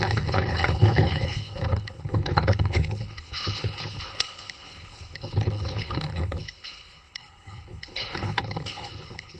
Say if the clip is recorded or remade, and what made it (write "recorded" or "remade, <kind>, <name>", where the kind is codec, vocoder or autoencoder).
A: remade, codec, HILCodec